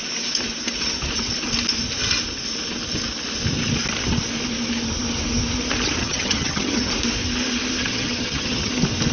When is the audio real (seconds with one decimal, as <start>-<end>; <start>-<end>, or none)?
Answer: 0.0-6.0; 6.9-7.8; 8.7-9.1

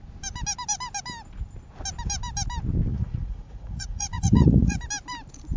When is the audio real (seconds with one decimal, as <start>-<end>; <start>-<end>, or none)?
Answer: 0.0-2.9; 4.8-5.6

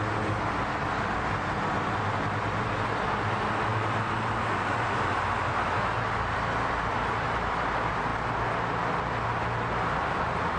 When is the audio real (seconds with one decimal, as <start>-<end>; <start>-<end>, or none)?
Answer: 0.0-10.6